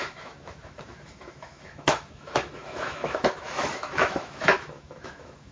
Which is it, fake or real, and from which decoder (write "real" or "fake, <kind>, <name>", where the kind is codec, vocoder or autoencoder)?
fake, autoencoder, DAC-VAE